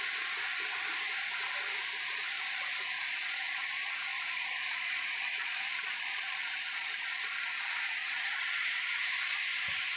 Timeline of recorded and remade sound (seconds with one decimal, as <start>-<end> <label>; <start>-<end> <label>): 0.0-3.0 recorded; 3.0-7.3 remade; 7.3-8.0 recorded; 8.0-8.8 remade; 8.8-10.0 recorded

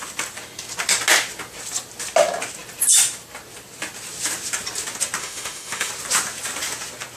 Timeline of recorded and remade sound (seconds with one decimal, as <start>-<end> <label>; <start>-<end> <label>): 0.0-5.2 recorded; 5.2-5.9 remade; 5.9-7.2 recorded